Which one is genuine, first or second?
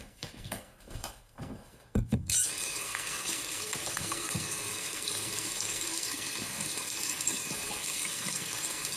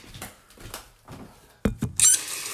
second